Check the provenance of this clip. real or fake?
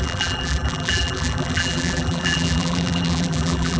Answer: fake